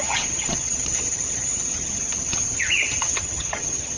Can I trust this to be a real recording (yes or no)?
no